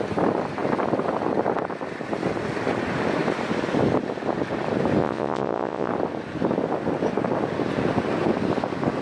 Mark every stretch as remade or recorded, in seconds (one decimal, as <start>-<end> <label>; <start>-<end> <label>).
0.0-5.0 recorded; 5.0-5.9 remade; 5.9-9.0 recorded